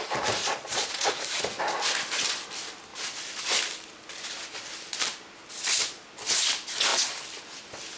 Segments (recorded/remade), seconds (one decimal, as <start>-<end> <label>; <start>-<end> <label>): 0.0-0.4 recorded; 0.4-1.2 remade; 1.2-8.0 recorded